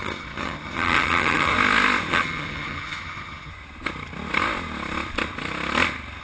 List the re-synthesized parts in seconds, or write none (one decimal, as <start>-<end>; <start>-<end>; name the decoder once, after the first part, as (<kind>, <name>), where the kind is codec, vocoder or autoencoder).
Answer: 0.0-1.5 (vocoder, HiFi-GAN); 2.1-3.5